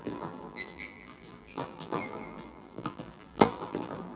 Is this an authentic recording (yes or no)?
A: no